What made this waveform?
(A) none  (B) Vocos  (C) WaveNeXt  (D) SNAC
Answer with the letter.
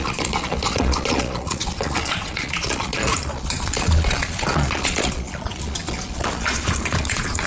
B